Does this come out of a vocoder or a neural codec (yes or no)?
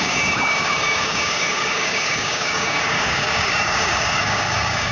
yes